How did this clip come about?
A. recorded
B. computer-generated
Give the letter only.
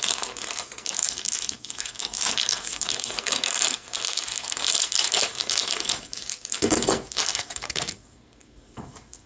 B